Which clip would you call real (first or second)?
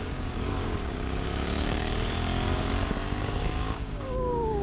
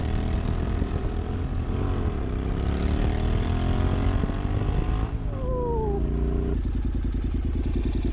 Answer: second